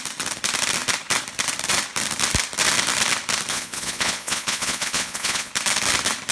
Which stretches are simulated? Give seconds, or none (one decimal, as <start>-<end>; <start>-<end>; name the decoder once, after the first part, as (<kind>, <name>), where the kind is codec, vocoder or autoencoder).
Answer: 3.5-5.5 (vocoder, Vocos)